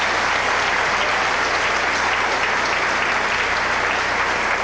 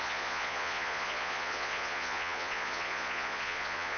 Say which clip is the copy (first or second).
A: second